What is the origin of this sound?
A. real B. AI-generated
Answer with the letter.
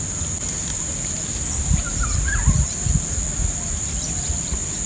A